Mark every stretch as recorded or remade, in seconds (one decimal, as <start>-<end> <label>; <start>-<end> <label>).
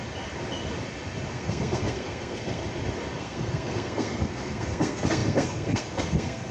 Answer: 0.0-1.3 recorded; 1.3-2.6 remade; 2.6-3.2 recorded; 3.2-6.5 remade